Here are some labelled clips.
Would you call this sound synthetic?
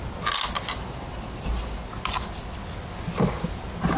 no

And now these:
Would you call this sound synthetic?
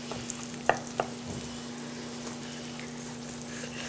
no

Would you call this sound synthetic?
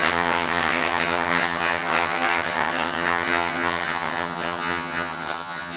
yes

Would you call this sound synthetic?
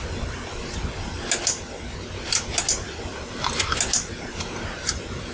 no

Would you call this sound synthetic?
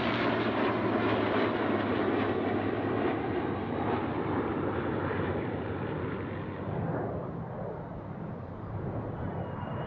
no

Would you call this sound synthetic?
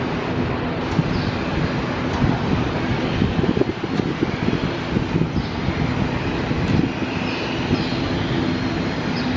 no